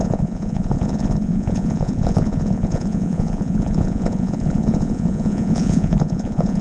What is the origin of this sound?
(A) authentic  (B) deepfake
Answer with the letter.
B